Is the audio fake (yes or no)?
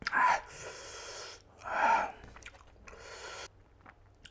no